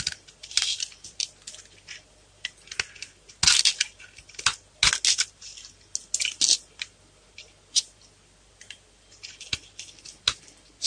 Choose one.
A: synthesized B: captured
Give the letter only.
B